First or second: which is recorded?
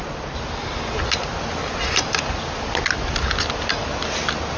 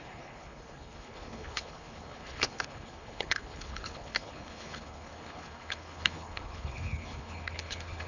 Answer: first